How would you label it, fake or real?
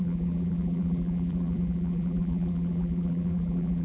fake